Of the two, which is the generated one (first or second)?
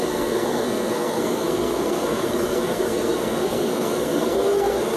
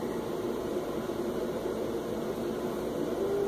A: first